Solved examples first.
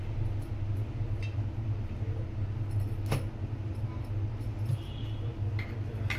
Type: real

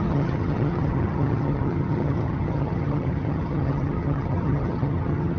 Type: fake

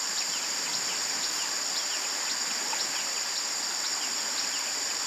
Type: real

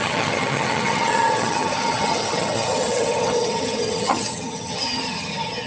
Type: fake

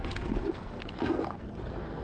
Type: fake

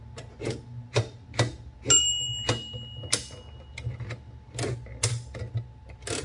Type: real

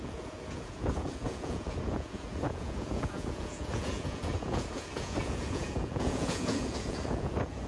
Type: fake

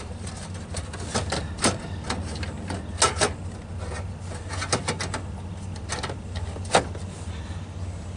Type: real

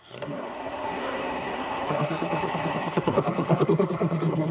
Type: fake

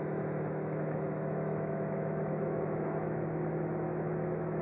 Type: fake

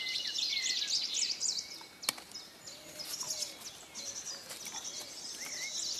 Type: real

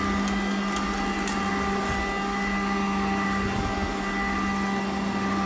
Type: real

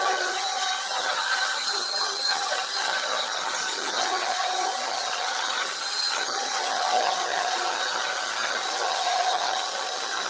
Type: fake